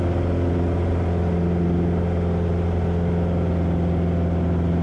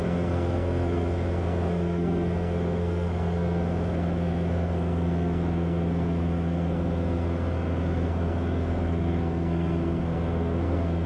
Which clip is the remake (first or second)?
second